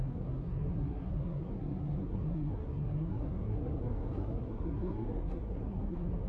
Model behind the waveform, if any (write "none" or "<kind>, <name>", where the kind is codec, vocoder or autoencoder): codec, SNAC